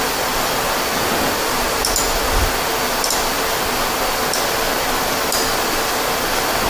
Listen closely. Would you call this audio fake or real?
real